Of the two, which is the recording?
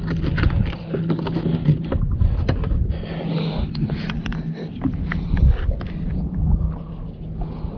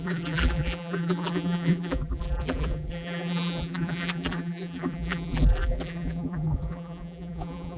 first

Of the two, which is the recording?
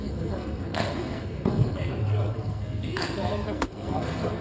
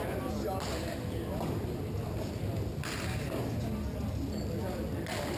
second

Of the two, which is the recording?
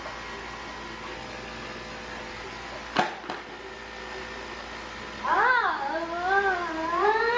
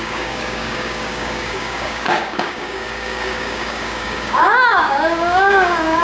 first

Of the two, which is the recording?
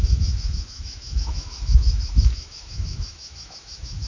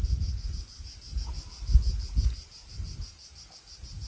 second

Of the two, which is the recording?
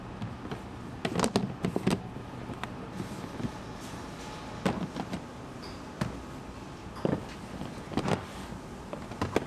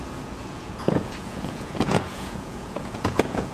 first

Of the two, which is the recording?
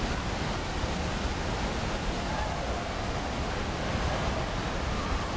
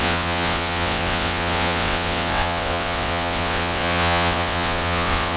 first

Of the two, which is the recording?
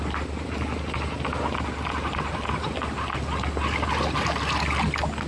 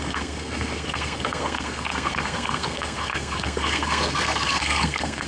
first